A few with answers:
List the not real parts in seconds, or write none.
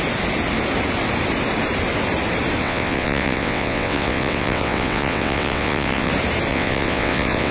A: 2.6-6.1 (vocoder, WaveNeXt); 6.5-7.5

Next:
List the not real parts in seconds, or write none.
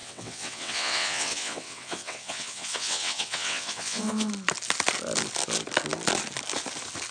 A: 0.0-4.3 (vocoder, WaveNeXt)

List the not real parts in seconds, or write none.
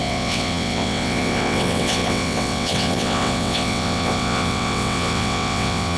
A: 0.0-6.0 (vocoder, WaveNeXt)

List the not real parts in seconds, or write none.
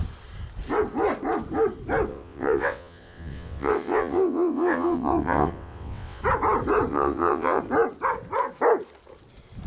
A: 2.1-6.2 (vocoder, WaveNeXt); 6.9-7.6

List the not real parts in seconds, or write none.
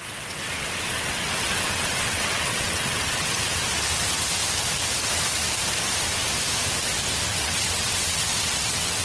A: 0.0-3.6 (vocoder, WaveNeXt); 7.3-9.0